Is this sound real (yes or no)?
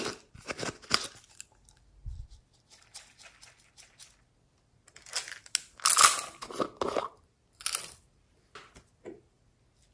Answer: yes